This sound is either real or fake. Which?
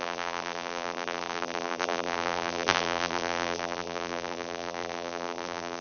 fake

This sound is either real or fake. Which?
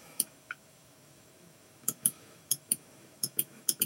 fake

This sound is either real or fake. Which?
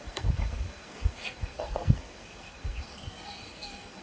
fake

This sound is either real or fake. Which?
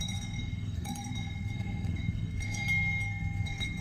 fake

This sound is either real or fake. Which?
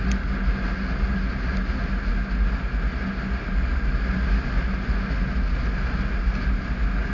real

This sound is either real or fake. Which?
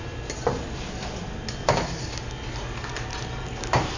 real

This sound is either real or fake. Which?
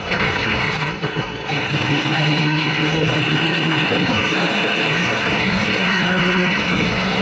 fake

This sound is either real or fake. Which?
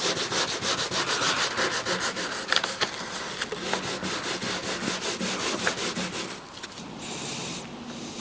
real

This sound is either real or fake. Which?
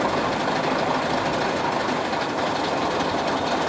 real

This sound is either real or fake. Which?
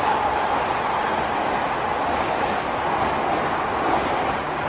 real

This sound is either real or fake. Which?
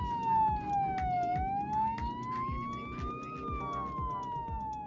real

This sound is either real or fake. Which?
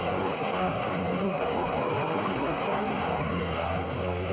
fake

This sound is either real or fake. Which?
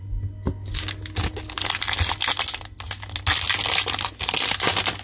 real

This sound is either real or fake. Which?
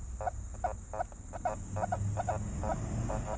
real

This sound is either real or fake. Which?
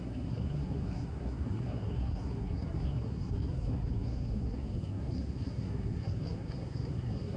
fake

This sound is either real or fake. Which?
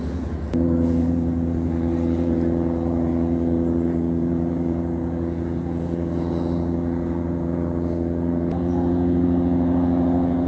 fake